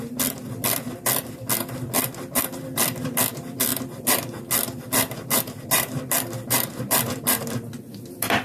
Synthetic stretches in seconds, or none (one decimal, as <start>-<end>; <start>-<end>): 0.0-8.4